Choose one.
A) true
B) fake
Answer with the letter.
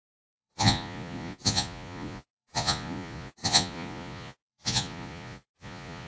B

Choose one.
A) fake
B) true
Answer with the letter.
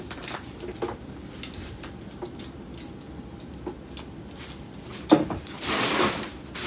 B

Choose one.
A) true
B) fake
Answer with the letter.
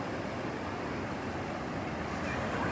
A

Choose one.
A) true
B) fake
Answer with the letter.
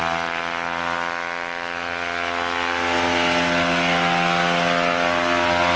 A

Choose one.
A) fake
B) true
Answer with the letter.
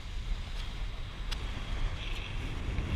B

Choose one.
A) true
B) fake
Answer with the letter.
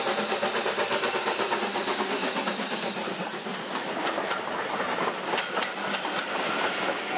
A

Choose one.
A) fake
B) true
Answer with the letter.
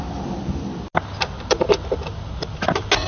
B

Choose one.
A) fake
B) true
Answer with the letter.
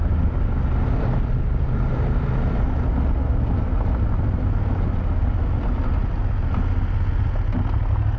B